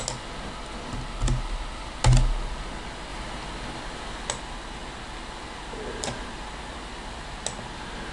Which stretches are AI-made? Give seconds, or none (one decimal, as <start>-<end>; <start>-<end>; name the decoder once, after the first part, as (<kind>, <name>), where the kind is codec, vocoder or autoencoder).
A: none